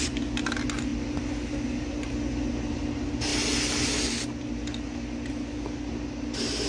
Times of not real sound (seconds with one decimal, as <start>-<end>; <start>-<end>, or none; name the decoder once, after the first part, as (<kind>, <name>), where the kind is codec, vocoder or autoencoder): none